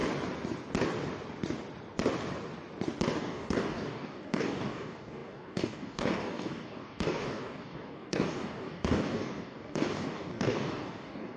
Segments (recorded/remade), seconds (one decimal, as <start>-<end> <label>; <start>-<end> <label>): 0.0-3.2 recorded; 3.2-11.4 remade